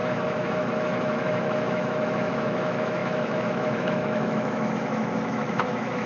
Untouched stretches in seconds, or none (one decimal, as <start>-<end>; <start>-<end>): none